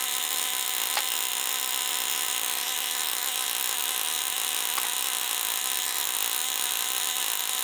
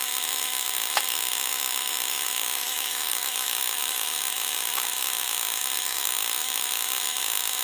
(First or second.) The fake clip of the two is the second